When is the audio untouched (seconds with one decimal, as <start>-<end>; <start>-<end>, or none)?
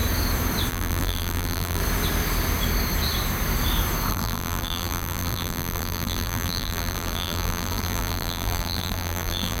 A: 0.0-0.7; 1.8-4.1